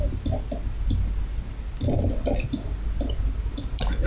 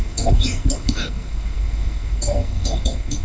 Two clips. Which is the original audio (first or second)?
first